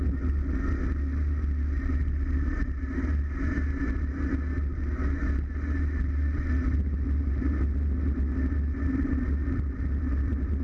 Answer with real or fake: real